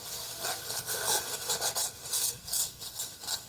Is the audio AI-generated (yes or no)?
yes